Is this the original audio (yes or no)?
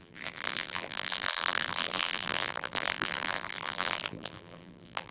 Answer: no